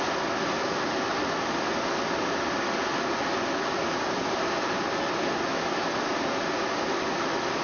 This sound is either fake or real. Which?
real